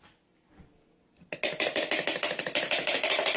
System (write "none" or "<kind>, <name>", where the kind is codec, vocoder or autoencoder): none